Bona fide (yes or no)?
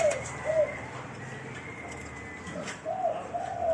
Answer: yes